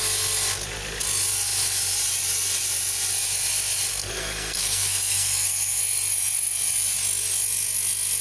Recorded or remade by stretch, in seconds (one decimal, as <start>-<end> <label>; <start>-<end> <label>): 0.0-3.9 recorded; 3.9-5.8 remade; 5.8-8.2 recorded